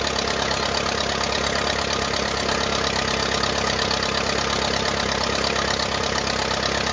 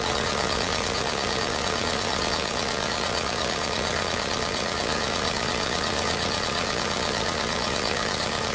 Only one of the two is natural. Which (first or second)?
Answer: first